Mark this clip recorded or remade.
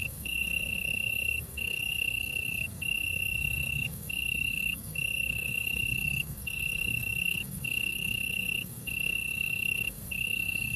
remade